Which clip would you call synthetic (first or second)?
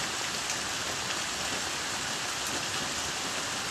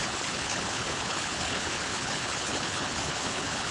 second